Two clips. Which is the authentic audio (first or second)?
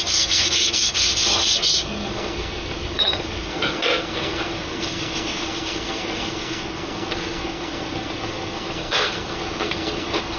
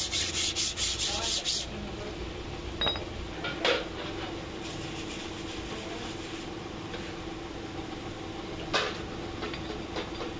second